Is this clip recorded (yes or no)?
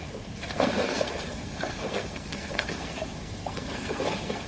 no